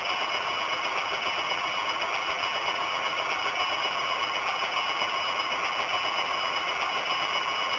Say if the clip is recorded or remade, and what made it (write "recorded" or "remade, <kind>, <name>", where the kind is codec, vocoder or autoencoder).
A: remade, vocoder, BigVGAN v2